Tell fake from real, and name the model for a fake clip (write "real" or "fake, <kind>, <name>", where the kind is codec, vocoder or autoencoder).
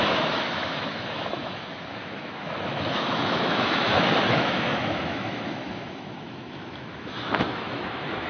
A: fake, autoencoder, DAC-VAE